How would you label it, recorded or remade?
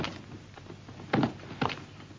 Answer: recorded